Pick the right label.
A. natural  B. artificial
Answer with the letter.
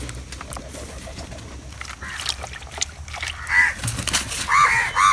A